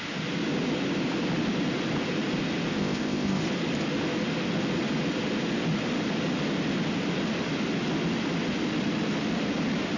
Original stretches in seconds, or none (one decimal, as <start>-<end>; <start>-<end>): 0.0-2.8; 3.4-10.0